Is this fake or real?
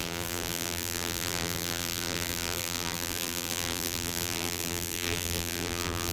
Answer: fake